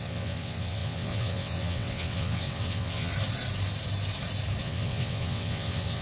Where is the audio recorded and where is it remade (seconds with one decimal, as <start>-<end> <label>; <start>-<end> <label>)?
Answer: 0.0-3.1 remade; 3.1-4.6 recorded; 4.6-6.0 remade